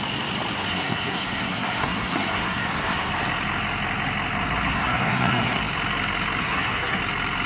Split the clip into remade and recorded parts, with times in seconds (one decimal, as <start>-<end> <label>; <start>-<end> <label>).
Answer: 0.0-0.7 recorded; 0.7-3.1 remade; 3.1-4.7 recorded; 4.7-5.6 remade; 5.6-6.4 recorded; 6.4-7.0 remade; 7.0-7.5 recorded

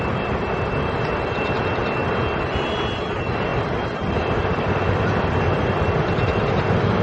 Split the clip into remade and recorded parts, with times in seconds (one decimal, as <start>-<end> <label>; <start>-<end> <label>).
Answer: 0.0-7.0 recorded

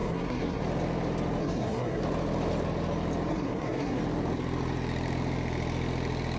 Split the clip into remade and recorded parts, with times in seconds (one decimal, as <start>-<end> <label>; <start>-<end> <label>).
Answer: 0.0-0.6 remade; 0.6-1.4 recorded; 1.4-2.0 remade; 2.0-3.3 recorded; 3.3-4.0 remade; 4.0-6.4 recorded